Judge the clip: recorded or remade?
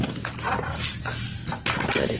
recorded